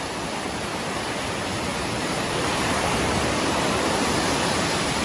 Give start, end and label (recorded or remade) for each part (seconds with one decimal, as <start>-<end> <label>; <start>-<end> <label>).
0.0-1.7 recorded; 1.7-5.0 remade